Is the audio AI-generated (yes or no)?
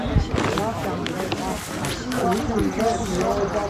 no